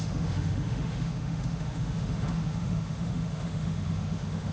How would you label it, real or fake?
fake